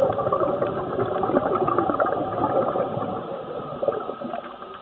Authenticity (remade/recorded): remade